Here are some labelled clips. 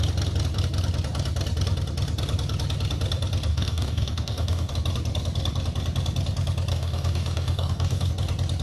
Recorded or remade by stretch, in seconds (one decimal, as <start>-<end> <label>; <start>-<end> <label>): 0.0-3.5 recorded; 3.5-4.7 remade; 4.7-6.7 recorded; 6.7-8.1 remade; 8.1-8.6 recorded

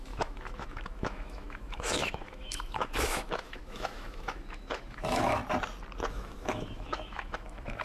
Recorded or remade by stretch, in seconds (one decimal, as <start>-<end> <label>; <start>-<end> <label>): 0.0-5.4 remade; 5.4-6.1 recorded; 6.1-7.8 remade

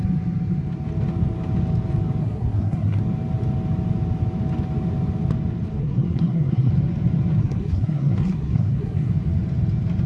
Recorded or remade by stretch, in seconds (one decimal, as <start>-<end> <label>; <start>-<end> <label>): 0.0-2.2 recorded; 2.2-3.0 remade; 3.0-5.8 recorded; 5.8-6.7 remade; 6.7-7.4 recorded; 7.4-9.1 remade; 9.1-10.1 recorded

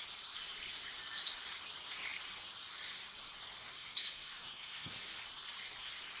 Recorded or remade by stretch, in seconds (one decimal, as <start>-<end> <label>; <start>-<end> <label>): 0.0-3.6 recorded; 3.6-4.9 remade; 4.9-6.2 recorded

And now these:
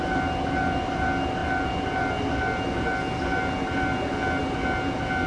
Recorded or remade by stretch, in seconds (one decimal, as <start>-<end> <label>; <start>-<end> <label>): 0.0-5.3 recorded